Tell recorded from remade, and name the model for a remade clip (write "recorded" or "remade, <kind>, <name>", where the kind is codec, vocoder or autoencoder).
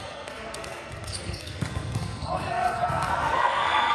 remade, codec, SNAC